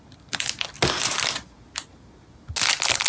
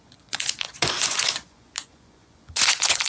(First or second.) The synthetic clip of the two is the second